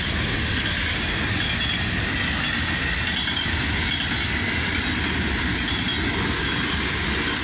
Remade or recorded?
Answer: recorded